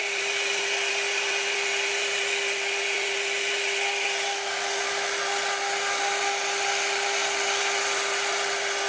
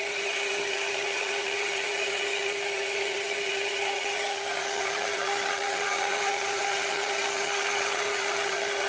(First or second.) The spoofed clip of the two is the second